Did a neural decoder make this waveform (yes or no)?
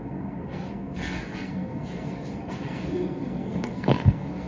yes